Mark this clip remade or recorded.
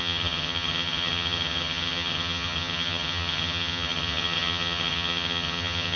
remade